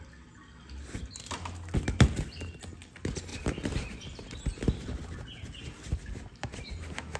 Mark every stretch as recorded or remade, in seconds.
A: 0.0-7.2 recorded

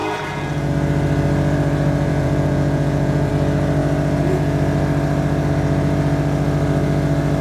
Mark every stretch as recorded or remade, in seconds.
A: 0.0-0.7 remade; 0.7-2.1 recorded; 2.1-3.3 remade; 3.3-7.4 recorded